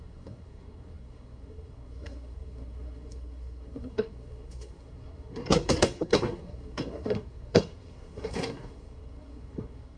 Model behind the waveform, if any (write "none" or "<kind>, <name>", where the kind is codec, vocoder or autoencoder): codec, SNAC